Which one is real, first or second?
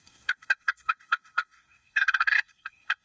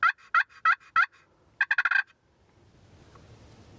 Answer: second